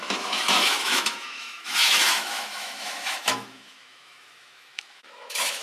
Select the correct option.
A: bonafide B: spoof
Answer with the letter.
B